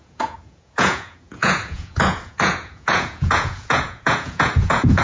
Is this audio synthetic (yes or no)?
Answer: yes